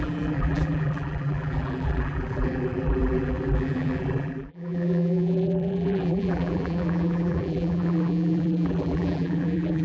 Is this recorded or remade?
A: remade